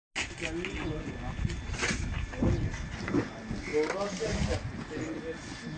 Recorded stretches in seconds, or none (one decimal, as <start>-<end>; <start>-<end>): 0.0-5.8

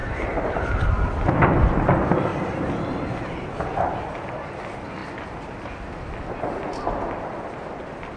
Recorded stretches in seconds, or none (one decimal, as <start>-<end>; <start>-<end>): 0.0-2.3; 4.1-8.2

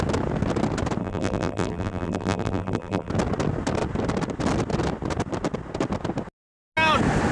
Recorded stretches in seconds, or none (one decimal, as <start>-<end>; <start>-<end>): 0.0-1.0; 3.1-7.3

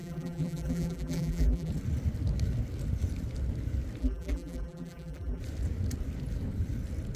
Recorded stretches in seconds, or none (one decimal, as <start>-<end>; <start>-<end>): 1.7-4.0; 5.4-7.2

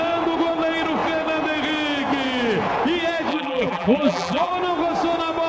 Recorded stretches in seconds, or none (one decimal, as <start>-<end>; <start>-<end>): 0.0-3.3; 4.5-5.5

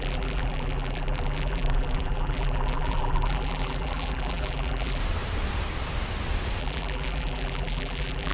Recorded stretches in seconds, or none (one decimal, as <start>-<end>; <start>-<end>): 5.0-6.6